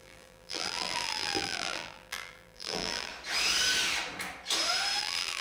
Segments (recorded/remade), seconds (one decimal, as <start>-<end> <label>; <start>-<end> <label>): 0.0-3.1 remade; 3.1-5.0 recorded; 5.0-5.4 remade